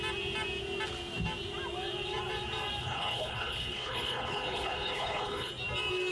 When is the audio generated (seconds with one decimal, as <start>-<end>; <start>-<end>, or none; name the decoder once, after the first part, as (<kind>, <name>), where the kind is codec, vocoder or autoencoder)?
2.8-5.5 (codec, HILCodec)